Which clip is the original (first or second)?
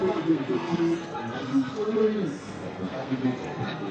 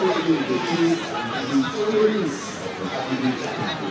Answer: second